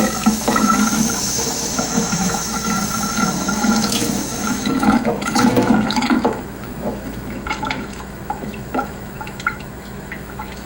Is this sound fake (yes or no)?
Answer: yes